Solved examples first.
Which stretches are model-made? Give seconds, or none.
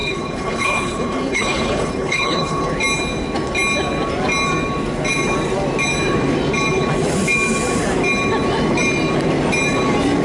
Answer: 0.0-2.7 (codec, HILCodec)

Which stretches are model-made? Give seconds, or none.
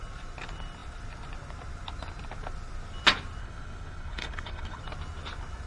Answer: 3.4-4.8 (codec, HILCodec)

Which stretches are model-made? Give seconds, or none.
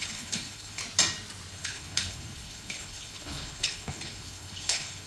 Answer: 0.0-0.8 (codec, HILCodec); 1.5-5.1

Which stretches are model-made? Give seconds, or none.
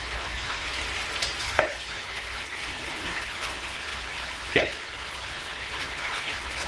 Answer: 0.0-0.8 (codec, HILCodec); 1.4-6.7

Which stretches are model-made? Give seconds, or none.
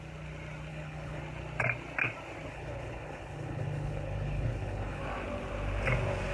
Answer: 0.7-1.2 (codec, HILCodec); 2.5-5.0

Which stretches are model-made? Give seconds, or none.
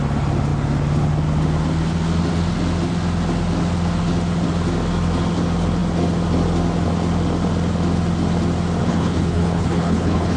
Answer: 8.9-10.4 (codec, HILCodec)